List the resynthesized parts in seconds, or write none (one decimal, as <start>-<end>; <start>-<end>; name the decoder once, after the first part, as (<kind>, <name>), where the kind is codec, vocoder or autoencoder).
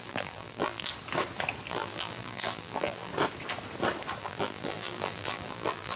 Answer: 0.0-0.9 (vocoder, BigVGAN v2); 1.7-3.1; 4.2-6.0